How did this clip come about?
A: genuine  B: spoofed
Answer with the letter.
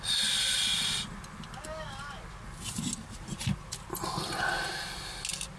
A